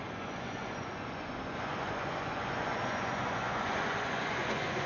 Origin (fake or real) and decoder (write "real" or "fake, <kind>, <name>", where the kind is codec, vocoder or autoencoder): fake, vocoder, Vocos